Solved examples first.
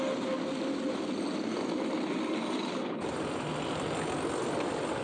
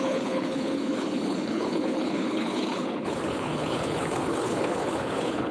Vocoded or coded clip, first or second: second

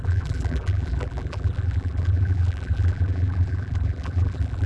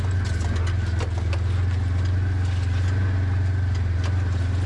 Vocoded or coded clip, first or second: first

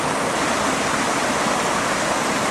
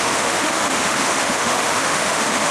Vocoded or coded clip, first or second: second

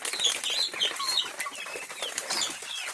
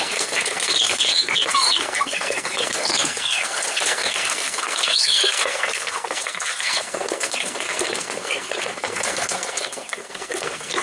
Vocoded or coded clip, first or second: second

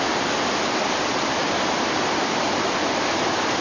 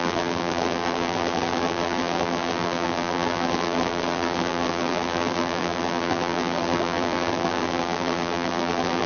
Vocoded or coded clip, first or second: second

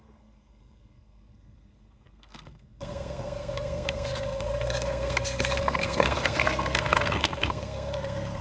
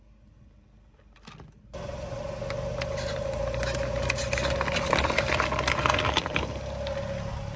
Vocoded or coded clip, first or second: first